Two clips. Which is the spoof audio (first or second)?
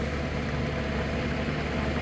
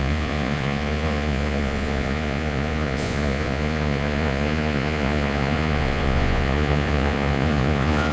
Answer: second